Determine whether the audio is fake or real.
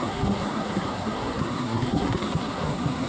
fake